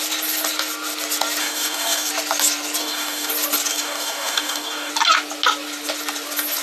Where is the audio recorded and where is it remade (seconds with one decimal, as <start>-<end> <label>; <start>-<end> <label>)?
0.0-1.4 recorded; 1.4-2.1 remade; 2.1-2.8 recorded; 2.8-3.3 remade; 3.3-3.7 recorded; 3.7-4.9 remade; 4.9-6.6 recorded